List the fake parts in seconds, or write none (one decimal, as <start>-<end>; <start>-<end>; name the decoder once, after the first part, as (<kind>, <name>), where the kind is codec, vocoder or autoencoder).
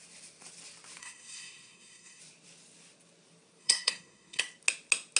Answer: 1.0-2.2 (codec, SNAC); 3.6-4.4